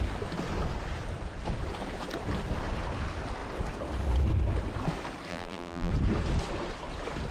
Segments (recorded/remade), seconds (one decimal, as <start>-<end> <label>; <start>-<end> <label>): 0.0-5.3 recorded; 5.3-5.9 remade; 5.9-7.3 recorded

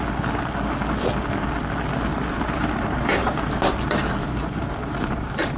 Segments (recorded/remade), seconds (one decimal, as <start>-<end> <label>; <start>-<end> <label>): 0.0-2.1 recorded; 2.1-3.8 remade; 3.8-4.2 recorded; 4.2-5.6 remade

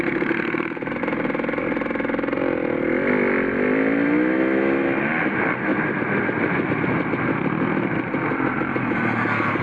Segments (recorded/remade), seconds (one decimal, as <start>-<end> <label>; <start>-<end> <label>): 0.0-5.7 recorded; 5.7-6.9 remade; 6.9-9.6 recorded

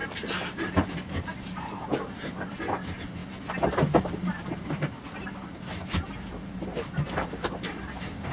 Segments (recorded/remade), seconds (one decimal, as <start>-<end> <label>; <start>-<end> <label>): 0.0-3.2 remade; 3.2-4.0 recorded; 4.0-8.3 remade

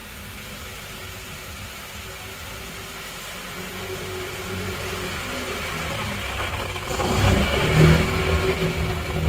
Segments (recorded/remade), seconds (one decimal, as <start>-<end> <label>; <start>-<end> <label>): 0.0-9.3 recorded

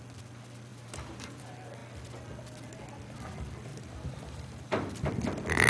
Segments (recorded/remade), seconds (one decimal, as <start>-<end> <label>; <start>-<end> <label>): 0.0-0.7 recorded; 0.7-1.4 remade; 1.4-3.7 recorded; 3.7-5.1 remade; 5.1-5.7 recorded

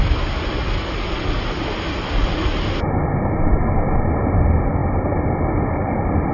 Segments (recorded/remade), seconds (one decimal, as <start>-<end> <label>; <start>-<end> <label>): 0.0-4.8 recorded; 4.8-6.3 remade